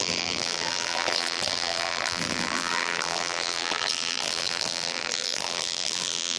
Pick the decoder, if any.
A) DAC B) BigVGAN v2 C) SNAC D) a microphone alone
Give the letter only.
B